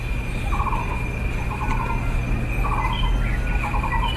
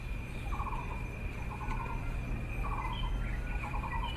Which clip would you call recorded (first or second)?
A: first